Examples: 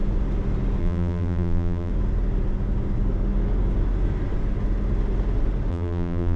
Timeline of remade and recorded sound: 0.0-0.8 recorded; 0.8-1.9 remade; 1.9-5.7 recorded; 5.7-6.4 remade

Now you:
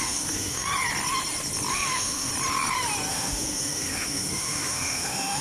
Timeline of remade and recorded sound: 0.0-0.7 remade; 0.7-1.7 recorded; 1.7-2.3 remade; 2.3-3.1 recorded; 3.1-5.4 remade

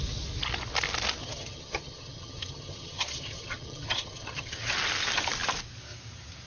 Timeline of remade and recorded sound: 0.0-1.2 recorded; 1.2-4.7 remade; 4.7-6.5 recorded

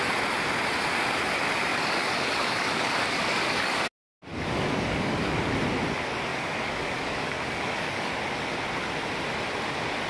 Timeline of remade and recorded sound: 0.0-1.7 recorded; 1.7-3.8 remade; 3.8-4.3 recorded; 4.3-5.5 remade; 5.5-6.3 recorded; 6.3-8.1 remade; 8.1-10.1 recorded